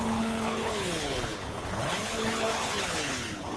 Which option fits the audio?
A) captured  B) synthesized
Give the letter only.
B